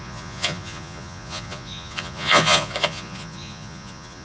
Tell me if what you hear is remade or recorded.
remade